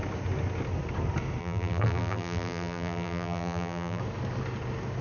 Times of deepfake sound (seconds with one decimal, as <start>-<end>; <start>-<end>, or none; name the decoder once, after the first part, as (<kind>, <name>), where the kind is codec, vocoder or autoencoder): 1.4-4.0 (vocoder, BigVGAN v2)